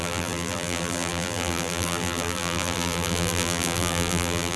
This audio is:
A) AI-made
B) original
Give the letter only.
A